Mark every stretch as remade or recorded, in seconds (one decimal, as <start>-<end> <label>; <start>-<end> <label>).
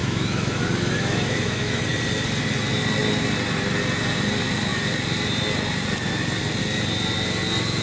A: 0.0-1.8 remade; 1.8-7.8 recorded